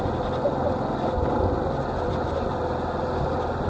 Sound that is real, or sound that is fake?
real